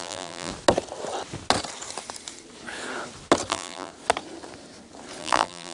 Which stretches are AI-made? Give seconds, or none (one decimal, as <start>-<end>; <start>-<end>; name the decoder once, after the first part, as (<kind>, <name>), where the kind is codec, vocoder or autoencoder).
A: 0.0-0.5 (vocoder, BigVGAN v2); 3.5-3.9; 5.2-5.7